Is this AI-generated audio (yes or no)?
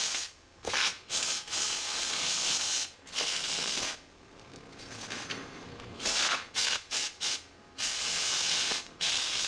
yes